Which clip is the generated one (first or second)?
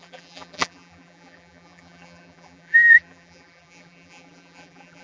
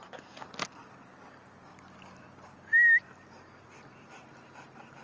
first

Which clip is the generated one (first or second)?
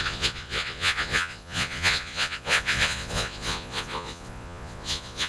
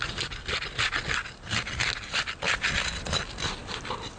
first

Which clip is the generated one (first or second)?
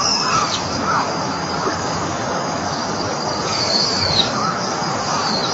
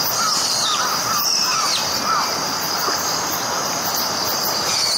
first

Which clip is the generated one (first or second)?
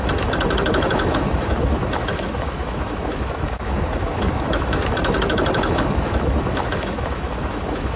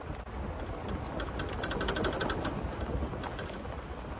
first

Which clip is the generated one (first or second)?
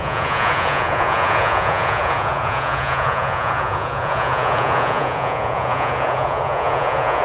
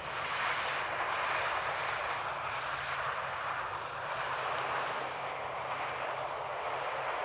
first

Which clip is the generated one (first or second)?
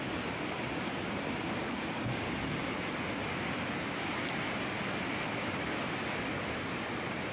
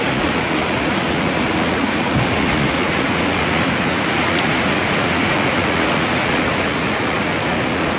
second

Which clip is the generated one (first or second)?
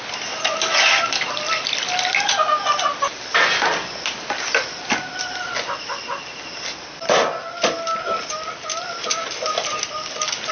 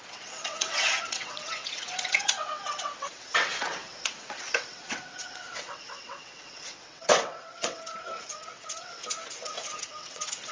second